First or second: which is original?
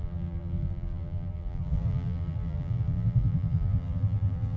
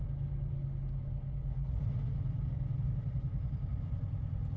second